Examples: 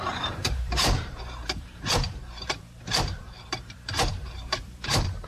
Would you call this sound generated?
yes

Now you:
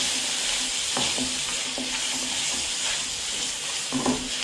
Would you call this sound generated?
no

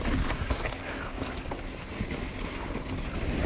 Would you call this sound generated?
no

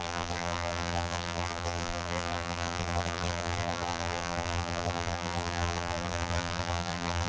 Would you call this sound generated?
yes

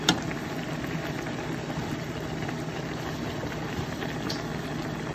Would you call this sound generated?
yes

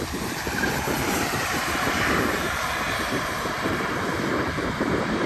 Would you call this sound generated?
yes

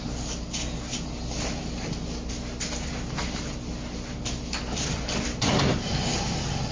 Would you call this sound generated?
no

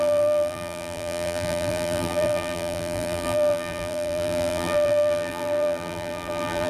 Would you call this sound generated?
yes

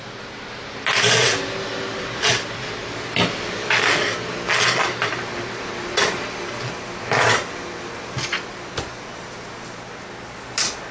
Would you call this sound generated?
no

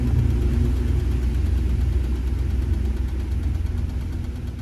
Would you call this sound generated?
no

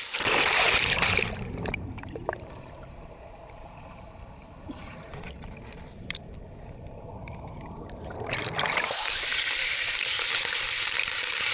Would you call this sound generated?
yes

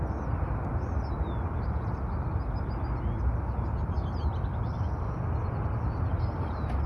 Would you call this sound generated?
no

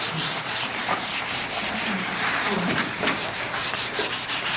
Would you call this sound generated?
yes